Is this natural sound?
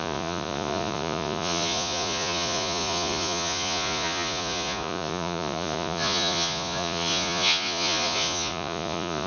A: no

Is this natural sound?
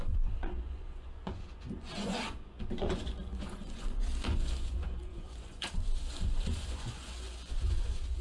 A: no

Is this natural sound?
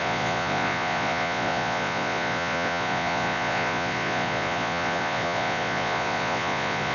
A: no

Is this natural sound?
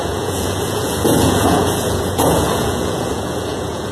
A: no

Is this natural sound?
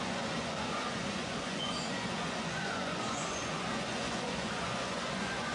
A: no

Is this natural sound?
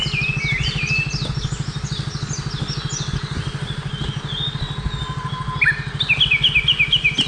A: yes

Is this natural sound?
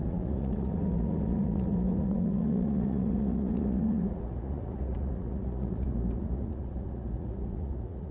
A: no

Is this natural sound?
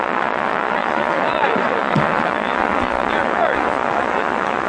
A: no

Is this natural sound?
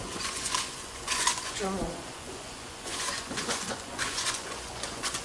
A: no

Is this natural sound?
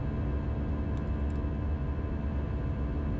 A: yes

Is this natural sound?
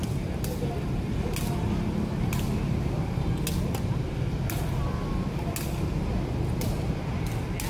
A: yes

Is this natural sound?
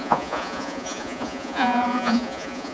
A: no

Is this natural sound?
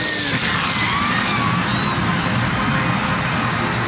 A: yes